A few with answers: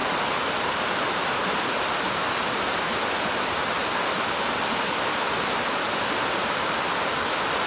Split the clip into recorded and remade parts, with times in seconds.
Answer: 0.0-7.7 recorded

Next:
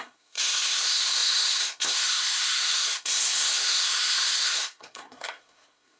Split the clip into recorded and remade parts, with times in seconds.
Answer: 0.0-6.0 remade